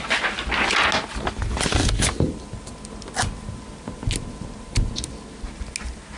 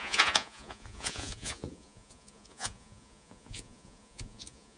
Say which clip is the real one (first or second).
first